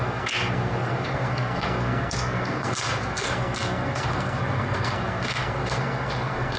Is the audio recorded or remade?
remade